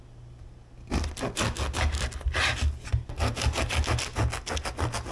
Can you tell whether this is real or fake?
real